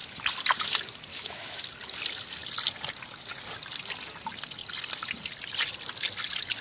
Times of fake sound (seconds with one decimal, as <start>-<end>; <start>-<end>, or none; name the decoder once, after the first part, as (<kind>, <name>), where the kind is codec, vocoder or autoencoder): 1.1-1.6 (autoencoder, DAC-VAE)